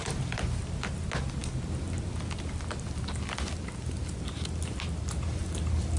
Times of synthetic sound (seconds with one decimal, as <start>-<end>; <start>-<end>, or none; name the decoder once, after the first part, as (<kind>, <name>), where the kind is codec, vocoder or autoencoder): none

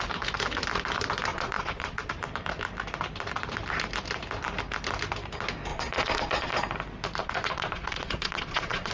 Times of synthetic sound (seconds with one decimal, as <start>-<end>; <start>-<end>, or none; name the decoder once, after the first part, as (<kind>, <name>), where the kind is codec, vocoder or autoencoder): 1.3-2.1 (vocoder, Vocos); 5.7-6.5; 7.2-8.9

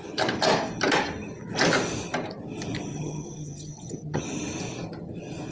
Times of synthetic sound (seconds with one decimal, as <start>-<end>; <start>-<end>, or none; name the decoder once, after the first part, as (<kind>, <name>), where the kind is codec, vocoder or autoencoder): 2.9-4.2 (vocoder, HiFi-GAN)